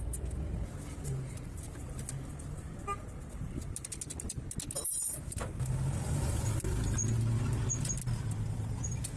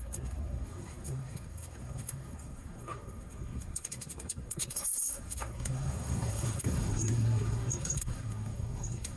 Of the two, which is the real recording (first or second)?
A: first